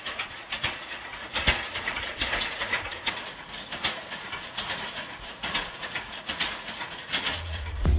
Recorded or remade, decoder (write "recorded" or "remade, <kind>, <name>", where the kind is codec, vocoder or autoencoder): remade, vocoder, Vocos